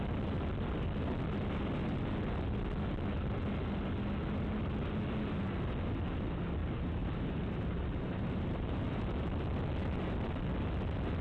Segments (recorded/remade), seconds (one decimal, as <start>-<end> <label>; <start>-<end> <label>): 0.0-6.6 recorded; 6.6-9.0 remade; 9.0-11.2 recorded